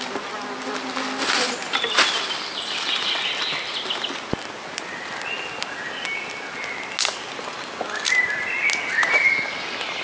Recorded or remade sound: recorded